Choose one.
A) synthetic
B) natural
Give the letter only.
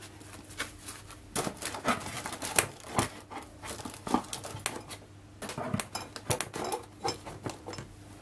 B